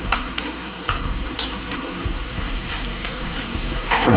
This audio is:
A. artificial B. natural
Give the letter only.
A